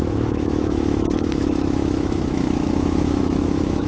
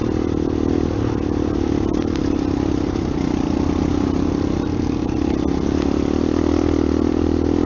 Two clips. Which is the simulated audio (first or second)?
first